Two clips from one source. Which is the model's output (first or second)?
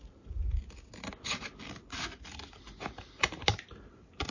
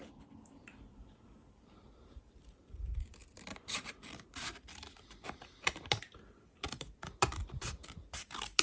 second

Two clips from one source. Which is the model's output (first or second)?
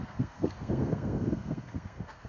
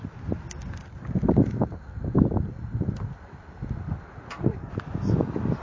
first